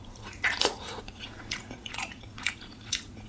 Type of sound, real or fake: fake